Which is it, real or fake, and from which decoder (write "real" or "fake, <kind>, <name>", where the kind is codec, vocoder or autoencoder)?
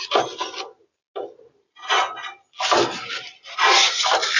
real